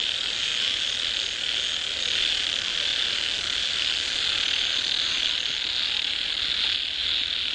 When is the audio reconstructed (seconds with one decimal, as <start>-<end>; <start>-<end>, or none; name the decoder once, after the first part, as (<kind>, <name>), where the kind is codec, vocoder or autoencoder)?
none

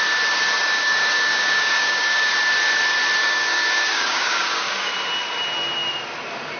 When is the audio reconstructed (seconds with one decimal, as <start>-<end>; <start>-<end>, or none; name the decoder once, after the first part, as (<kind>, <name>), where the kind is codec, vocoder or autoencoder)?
0.6-2.3 (codec, DAC); 3.2-4.9

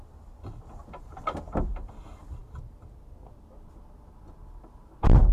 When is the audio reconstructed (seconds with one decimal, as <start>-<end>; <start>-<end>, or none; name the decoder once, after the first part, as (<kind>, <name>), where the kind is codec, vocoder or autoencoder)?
none

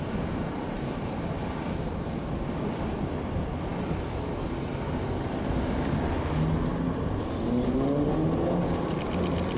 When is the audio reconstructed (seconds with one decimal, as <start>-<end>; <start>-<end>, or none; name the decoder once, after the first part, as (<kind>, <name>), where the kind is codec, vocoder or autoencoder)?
none

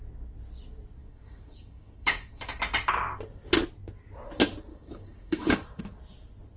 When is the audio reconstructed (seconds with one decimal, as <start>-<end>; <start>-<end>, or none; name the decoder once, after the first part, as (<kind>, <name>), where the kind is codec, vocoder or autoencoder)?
1.0-2.6 (codec, DAC); 4.7-5.8

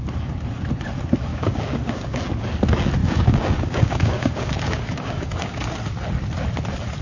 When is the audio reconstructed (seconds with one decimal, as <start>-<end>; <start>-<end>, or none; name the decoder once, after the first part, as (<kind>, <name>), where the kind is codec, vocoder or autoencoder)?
1.3-2.2 (codec, DAC); 3.0-5.6

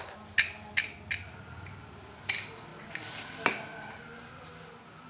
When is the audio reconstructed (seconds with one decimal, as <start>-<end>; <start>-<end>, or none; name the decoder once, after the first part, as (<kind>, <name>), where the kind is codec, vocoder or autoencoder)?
none